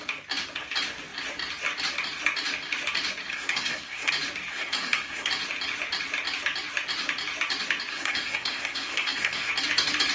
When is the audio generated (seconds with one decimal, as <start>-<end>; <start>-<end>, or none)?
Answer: 3.3-4.1; 4.5-5.3; 7.9-9.5